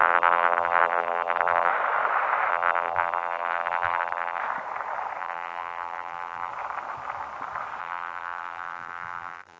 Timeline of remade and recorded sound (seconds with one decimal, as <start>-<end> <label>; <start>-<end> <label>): 0.0-1.7 remade; 1.7-2.5 recorded; 2.5-4.4 remade; 4.4-5.2 recorded; 5.2-6.5 remade; 6.5-7.8 recorded; 7.8-9.6 remade